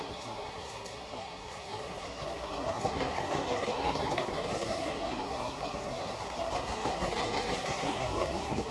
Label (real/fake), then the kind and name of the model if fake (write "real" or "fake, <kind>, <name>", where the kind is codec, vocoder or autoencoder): fake, codec, SNAC